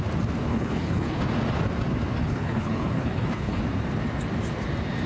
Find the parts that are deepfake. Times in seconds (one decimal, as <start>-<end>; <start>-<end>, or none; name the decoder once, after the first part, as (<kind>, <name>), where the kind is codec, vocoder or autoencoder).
0.5-1.2 (codec, HILCodec); 2.2-3.6